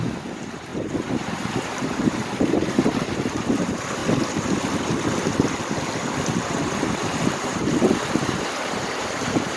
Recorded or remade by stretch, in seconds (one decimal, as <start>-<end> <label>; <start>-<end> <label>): 0.0-4.0 remade; 4.0-6.5 recorded; 6.5-9.6 remade